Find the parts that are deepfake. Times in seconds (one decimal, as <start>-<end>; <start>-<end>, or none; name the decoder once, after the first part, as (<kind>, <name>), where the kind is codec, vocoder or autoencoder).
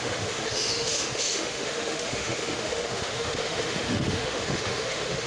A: 0.0-5.3 (autoencoder, DAC-VAE)